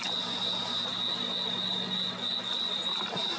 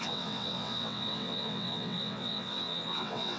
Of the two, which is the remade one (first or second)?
second